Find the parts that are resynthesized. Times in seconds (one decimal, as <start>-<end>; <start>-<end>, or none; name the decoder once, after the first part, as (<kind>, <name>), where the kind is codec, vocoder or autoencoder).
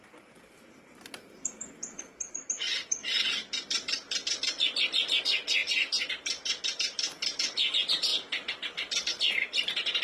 none